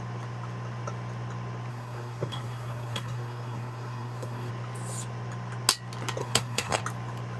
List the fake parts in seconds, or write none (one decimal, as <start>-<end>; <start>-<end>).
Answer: 1.7-4.5; 6.2-6.8